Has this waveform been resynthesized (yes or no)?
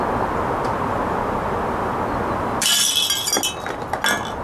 no